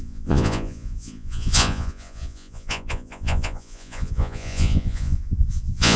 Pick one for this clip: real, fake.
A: fake